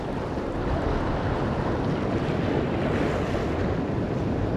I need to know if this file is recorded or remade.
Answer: recorded